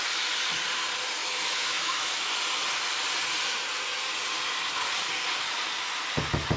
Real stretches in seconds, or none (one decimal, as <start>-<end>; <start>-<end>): 0.0-1.2; 2.3-6.6